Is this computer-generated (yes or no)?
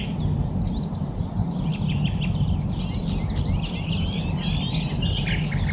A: no